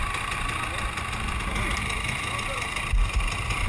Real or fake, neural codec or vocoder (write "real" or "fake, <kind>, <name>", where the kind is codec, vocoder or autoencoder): real